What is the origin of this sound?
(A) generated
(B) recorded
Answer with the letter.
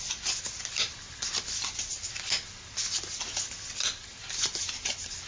B